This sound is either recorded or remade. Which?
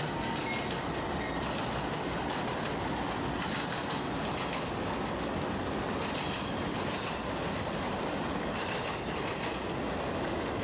recorded